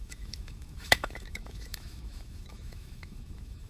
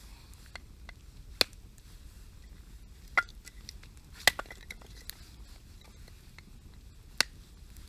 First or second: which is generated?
first